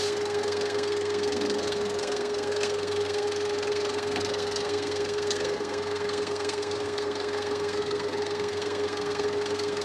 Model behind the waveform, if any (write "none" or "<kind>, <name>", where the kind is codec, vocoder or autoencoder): codec, SNAC